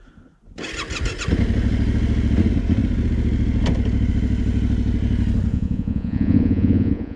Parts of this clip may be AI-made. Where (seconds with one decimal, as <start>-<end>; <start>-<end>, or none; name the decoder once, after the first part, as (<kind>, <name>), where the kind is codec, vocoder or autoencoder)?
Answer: 5.5-7.2 (vocoder, Vocos)